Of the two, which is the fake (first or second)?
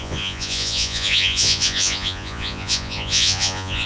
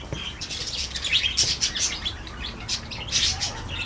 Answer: first